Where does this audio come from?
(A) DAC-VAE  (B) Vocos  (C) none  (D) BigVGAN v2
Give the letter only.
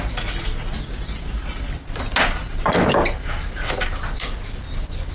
C